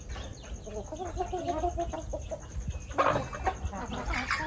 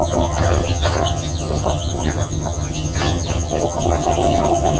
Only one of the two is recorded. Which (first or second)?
first